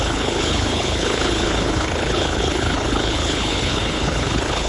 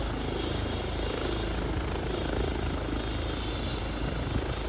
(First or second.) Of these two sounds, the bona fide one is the second